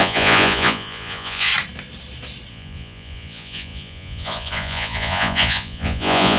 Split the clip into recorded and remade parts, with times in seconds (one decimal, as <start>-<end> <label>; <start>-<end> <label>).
0.0-1.5 remade; 1.5-2.5 recorded; 2.5-6.4 remade